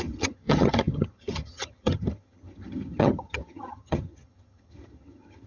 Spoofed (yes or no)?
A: yes